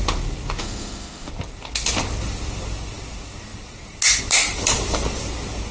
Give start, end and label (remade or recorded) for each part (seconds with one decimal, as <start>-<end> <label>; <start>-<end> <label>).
0.0-0.6 recorded; 0.6-1.3 remade; 1.3-5.7 recorded